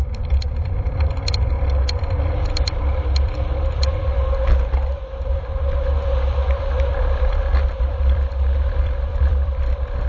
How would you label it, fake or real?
fake